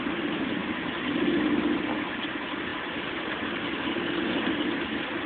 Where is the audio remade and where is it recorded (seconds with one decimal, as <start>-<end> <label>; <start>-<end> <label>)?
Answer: 0.0-5.3 recorded